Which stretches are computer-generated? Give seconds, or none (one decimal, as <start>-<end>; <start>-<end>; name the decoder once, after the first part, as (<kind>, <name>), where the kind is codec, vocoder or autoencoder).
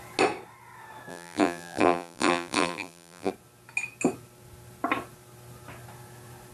1.1-3.3 (vocoder, BigVGAN v2)